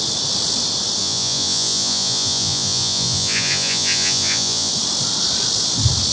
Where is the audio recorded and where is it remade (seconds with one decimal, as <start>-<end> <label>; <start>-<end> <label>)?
0.0-1.0 recorded; 1.0-4.7 remade; 4.7-6.1 recorded

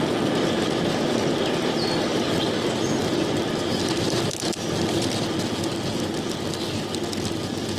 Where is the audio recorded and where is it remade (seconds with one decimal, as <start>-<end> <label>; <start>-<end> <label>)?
0.0-7.8 recorded